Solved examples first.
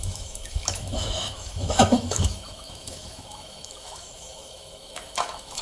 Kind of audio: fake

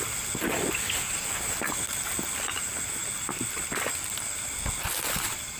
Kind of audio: real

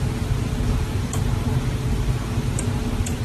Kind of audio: real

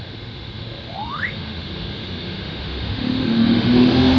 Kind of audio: fake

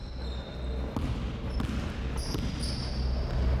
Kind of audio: real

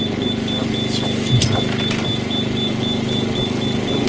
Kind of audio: real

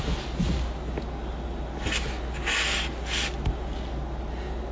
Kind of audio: real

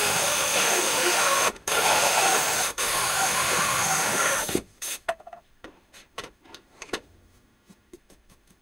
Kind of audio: fake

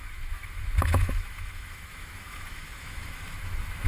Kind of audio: fake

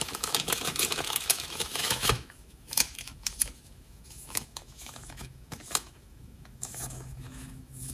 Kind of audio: fake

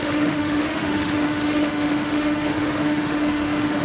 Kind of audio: fake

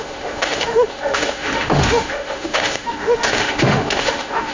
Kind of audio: fake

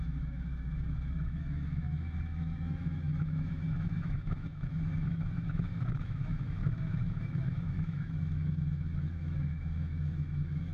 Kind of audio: fake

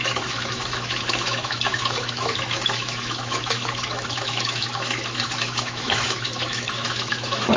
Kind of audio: fake